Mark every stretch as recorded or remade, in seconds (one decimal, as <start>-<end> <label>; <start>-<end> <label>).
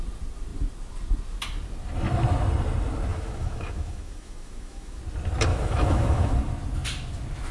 0.0-3.1 recorded; 3.1-5.0 remade; 5.0-5.5 recorded; 5.5-6.3 remade; 6.3-7.5 recorded